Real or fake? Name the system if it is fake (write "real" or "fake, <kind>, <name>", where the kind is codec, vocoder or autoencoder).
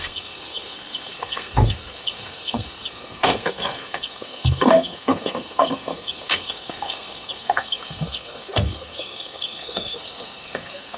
fake, codec, SNAC